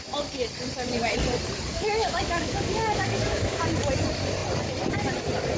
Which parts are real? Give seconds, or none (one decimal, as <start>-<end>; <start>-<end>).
0.0-1.7; 3.6-5.6